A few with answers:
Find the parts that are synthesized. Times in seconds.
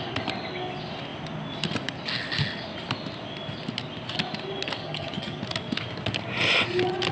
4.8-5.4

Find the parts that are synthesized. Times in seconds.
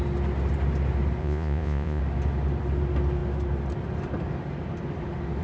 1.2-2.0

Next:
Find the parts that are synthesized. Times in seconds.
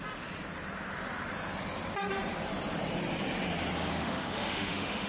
3.9-5.1